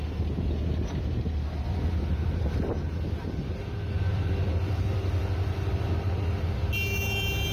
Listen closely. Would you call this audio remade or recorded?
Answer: recorded